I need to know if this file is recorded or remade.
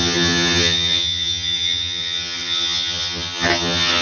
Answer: remade